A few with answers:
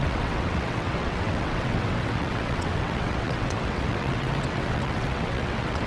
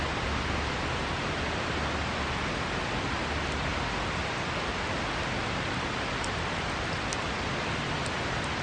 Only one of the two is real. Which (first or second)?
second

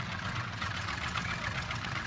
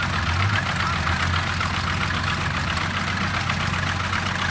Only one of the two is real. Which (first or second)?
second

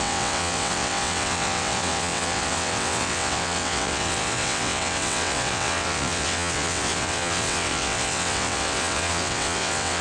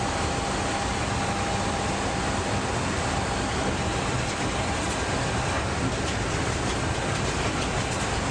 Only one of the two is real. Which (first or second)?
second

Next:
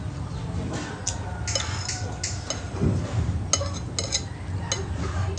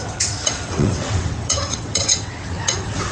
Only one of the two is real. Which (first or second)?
first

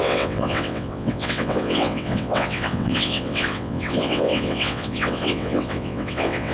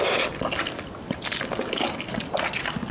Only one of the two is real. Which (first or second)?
second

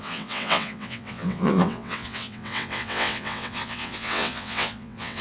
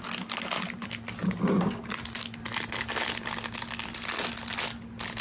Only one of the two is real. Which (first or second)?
second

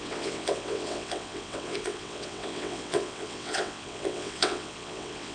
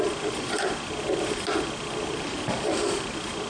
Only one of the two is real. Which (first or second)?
second